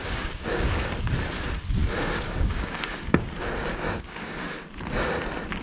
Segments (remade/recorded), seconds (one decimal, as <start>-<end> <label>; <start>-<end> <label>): 0.0-0.8 remade; 0.8-1.8 recorded; 1.8-3.3 remade; 3.3-3.7 recorded; 3.7-4.5 remade; 4.5-5.6 recorded